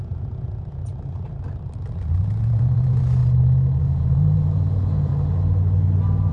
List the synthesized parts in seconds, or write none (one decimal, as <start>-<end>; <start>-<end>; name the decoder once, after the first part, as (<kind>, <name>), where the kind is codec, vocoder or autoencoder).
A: 0.0-0.9 (vocoder, Vocos); 2.5-3.2; 3.8-5.1